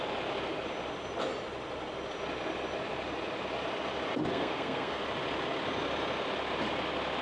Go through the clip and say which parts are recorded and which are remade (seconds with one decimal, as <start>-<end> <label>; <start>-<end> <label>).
0.0-4.3 recorded; 4.3-5.0 remade; 5.0-7.2 recorded